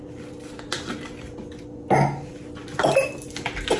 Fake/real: real